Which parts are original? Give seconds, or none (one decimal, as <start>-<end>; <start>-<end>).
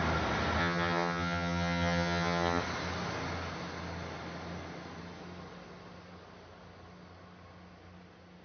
0.0-0.6; 2.6-8.4